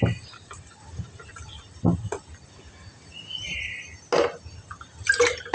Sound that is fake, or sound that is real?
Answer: real